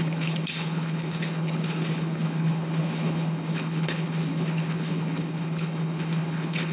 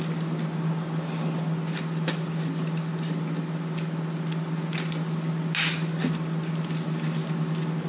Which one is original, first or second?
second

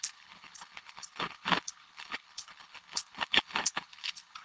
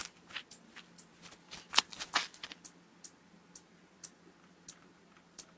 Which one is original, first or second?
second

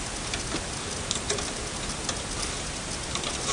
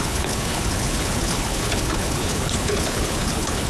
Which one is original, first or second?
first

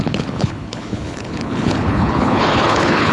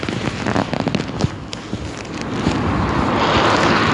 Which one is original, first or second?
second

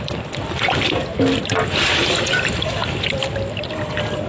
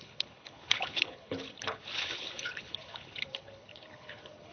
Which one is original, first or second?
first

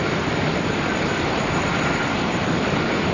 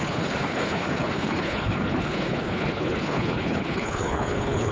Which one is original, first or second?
first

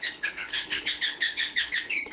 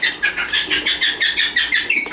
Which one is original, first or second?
second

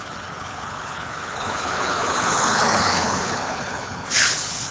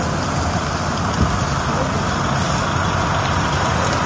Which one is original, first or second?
second